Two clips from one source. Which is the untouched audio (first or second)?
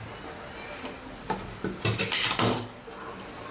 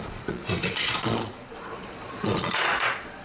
first